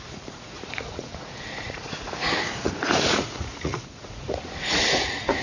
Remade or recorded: remade